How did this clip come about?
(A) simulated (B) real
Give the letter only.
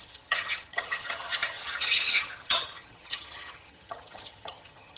A